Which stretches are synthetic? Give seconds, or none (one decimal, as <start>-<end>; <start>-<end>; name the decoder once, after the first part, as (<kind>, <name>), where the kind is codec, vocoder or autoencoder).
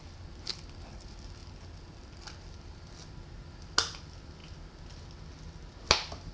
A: none